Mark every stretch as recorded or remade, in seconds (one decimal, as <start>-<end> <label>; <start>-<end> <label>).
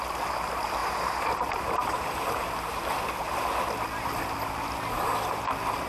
0.0-0.8 recorded; 0.8-3.5 remade; 3.5-5.9 recorded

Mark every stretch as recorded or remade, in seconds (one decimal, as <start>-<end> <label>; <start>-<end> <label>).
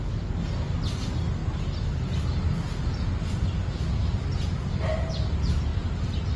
0.0-6.4 recorded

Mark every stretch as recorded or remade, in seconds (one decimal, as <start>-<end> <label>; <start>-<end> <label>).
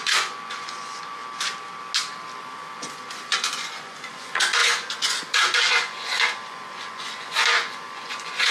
0.0-1.2 remade; 1.2-2.4 recorded; 2.4-8.5 remade